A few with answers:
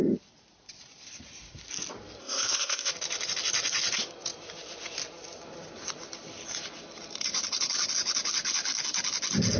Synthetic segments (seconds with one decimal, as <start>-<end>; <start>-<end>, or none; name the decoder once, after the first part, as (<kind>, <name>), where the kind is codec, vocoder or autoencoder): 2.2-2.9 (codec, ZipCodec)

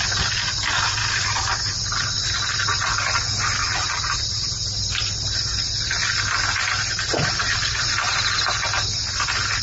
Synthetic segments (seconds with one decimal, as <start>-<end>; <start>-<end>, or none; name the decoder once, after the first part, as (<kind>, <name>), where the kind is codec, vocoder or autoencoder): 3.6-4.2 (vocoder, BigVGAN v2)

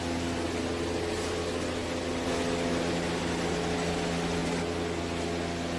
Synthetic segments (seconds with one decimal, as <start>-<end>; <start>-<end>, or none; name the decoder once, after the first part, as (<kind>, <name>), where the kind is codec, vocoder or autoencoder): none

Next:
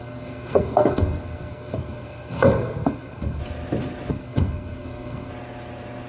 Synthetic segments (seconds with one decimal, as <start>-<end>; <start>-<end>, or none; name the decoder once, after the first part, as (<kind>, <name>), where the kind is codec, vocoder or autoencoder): 0.0-3.4 (codec, SNAC); 4.1-5.3